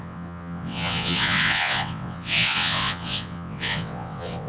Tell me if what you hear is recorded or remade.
remade